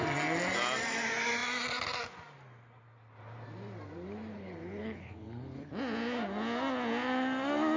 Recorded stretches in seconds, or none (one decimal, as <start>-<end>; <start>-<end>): 0.0-4.3; 5.7-7.8